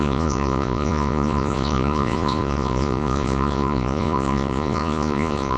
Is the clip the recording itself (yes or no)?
no